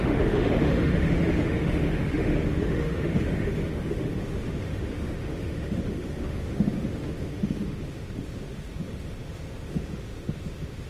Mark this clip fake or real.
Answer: fake